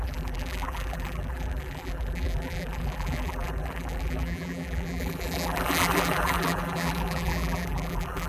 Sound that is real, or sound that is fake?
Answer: fake